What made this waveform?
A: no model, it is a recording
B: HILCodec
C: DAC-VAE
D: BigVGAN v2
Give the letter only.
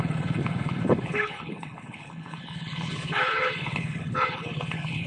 B